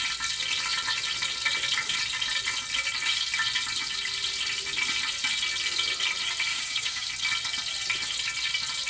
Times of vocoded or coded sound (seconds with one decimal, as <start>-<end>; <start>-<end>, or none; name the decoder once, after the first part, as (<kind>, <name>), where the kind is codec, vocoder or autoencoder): 6.5-7.1 (codec, DAC)